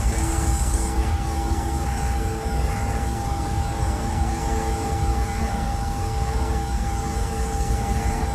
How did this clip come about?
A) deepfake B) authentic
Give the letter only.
A